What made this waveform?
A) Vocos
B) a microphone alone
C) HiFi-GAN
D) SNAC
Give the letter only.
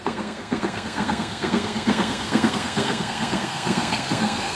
D